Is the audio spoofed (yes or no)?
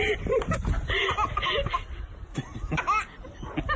no